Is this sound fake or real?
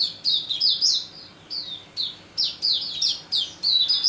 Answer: real